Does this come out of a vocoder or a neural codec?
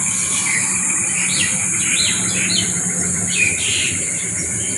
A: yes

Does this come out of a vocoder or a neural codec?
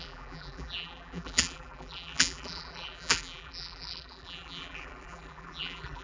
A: yes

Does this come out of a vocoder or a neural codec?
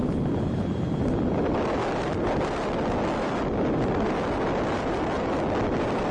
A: no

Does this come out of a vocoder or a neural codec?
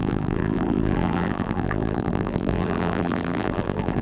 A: yes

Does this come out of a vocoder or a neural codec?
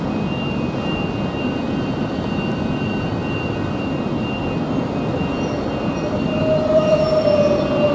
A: yes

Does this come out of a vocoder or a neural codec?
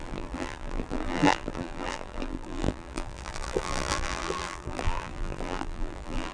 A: yes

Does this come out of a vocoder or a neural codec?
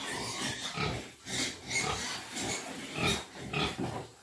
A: yes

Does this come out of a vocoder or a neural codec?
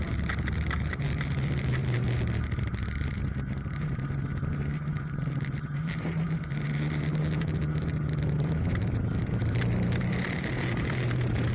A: yes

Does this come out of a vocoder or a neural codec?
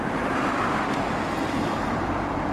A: yes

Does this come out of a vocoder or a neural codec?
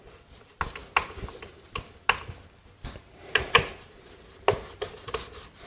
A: no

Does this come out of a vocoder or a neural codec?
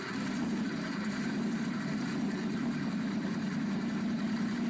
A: yes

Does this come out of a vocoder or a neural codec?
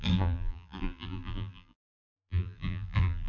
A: yes